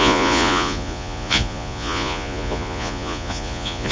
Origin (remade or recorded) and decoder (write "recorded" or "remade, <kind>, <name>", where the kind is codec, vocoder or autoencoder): remade, vocoder, Vocos